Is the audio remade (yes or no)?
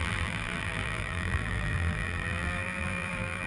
yes